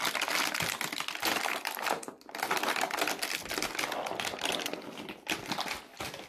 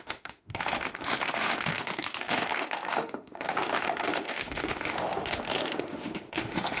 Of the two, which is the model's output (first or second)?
second